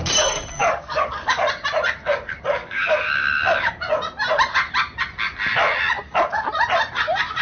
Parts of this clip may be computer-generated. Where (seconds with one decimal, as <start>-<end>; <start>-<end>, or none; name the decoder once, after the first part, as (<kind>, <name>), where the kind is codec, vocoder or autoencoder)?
0.6-1.4 (codec, DAC); 2.6-3.7